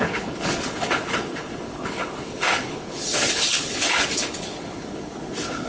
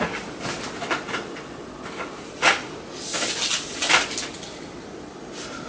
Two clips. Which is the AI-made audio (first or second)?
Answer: first